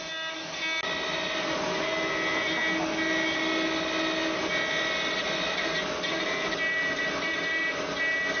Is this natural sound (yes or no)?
yes